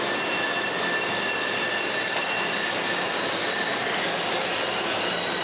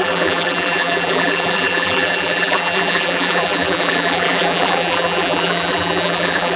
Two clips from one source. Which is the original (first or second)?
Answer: first